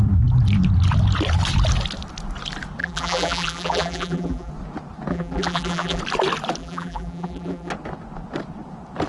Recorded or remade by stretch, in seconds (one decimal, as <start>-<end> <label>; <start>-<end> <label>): 0.0-2.8 recorded; 2.8-4.5 remade; 4.5-5.1 recorded; 5.1-6.0 remade; 6.0-6.6 recorded; 6.6-7.7 remade; 7.7-9.1 recorded